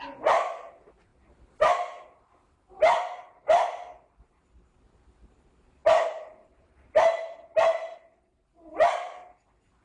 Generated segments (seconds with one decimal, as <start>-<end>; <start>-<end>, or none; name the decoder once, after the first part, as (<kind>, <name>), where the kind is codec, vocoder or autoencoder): 5.8-6.9 (vocoder, BigVGAN v2)

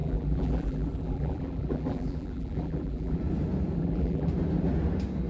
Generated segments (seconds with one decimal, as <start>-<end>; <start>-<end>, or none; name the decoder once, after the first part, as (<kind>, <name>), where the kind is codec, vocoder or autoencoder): 0.0-3.2 (vocoder, BigVGAN v2); 3.8-4.3

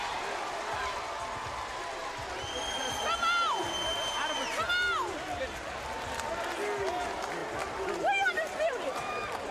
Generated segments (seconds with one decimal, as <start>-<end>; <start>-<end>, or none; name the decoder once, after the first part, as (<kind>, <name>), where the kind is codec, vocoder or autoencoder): none